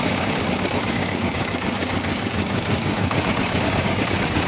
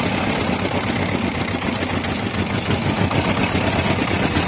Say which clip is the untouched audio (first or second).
second